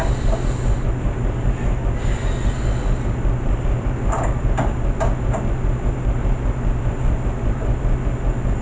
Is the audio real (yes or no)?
yes